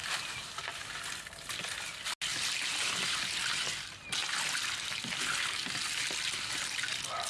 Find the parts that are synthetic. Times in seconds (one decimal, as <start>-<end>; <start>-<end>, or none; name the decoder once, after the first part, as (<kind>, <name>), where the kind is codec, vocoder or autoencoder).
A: 2.3-3.2 (vocoder, BigVGAN v2)